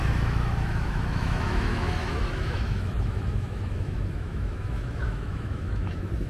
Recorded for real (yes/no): no